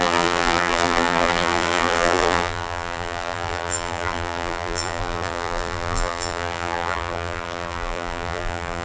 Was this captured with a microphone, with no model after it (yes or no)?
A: no